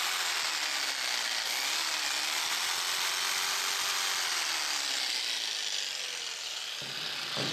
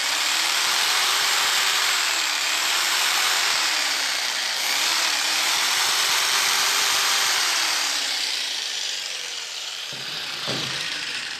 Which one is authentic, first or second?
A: first